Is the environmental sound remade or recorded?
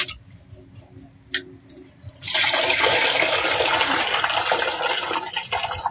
recorded